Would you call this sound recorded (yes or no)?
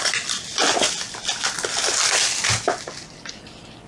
yes